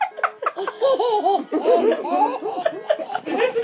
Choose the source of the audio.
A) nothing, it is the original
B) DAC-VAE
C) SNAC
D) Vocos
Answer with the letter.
A